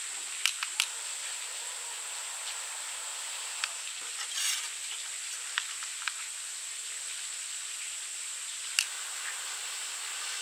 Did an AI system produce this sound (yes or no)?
no